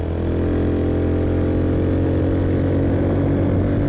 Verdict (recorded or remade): recorded